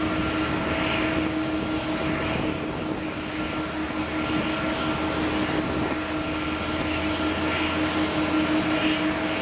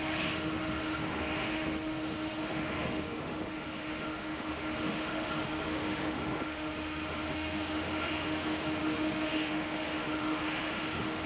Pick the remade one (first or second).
second